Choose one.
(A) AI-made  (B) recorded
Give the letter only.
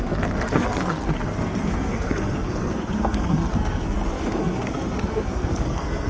A